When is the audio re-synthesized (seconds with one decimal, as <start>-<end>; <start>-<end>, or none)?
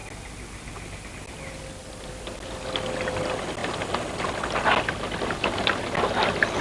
none